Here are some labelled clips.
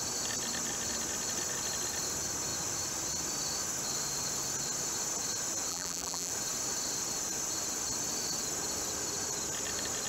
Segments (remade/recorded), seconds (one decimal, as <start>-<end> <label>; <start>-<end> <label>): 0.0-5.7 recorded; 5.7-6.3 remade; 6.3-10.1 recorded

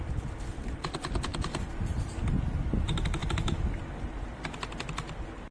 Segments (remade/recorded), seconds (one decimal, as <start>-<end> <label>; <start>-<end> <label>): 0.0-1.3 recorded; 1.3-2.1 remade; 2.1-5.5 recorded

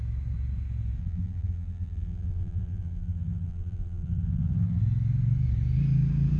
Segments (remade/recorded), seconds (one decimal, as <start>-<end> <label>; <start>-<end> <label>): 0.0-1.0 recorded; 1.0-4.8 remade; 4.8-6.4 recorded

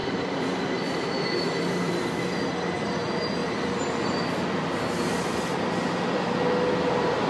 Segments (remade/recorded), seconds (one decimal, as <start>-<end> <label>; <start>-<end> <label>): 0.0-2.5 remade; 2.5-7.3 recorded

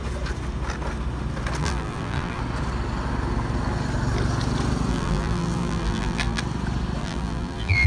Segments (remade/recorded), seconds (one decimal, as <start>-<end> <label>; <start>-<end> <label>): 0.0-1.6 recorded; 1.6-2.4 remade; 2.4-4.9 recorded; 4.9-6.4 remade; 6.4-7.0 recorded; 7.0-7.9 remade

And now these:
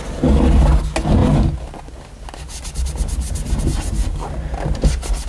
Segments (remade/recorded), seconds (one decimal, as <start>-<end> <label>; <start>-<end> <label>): 0.0-5.3 recorded